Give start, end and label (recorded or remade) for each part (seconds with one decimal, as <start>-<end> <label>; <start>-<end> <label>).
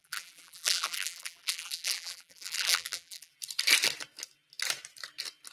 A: 0.0-3.3 remade; 3.3-5.5 recorded